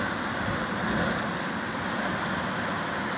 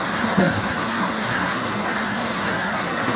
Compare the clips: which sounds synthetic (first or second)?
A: second